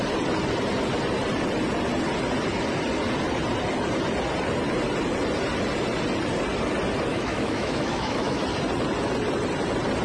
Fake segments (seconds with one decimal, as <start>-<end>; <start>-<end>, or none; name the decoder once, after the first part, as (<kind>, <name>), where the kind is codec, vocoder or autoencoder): 7.1-8.4 (autoencoder, DAC-VAE)